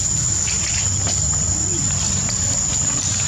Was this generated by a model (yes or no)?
no